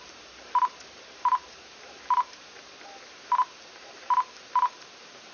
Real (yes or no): no